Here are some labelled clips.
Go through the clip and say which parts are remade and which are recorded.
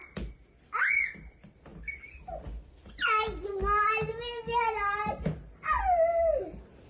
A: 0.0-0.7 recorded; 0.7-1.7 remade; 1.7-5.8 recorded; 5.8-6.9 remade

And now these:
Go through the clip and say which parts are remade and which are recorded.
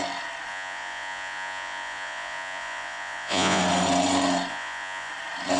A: 0.0-0.5 recorded; 0.5-3.6 remade; 3.6-4.5 recorded; 4.5-5.1 remade; 5.1-5.6 recorded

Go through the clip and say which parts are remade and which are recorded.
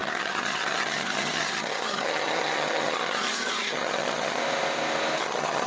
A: 0.0-4.4 remade; 4.4-5.2 recorded; 5.2-5.7 remade